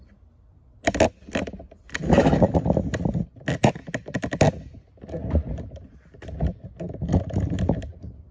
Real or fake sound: real